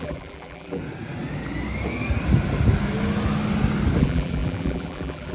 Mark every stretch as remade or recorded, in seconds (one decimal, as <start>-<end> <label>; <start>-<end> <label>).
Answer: 0.0-0.8 remade; 0.8-4.0 recorded; 4.0-5.3 remade